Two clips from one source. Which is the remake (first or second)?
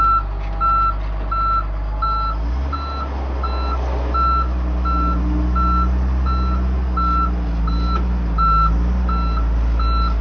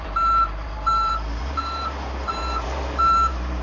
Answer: second